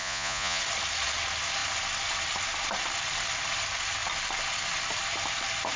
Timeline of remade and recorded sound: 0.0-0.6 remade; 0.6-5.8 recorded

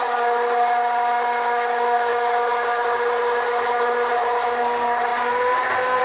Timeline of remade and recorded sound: 0.0-6.0 recorded

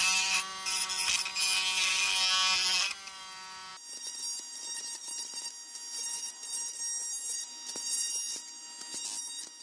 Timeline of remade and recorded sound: 0.0-9.6 recorded

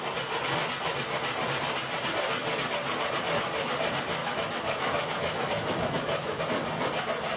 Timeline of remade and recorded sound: 0.0-4.2 recorded; 4.2-6.4 remade; 6.4-7.4 recorded

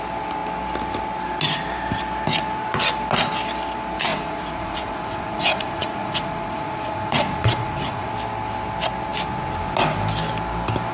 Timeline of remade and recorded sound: 0.0-4.1 recorded; 4.1-8.1 remade; 8.1-10.9 recorded

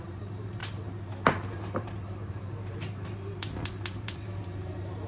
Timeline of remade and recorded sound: 0.0-5.1 remade

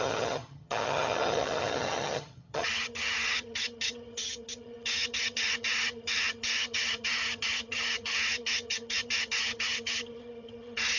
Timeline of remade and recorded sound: 0.0-11.0 remade

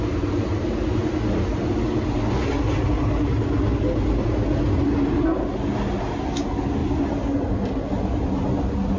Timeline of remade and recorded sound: 0.0-9.0 recorded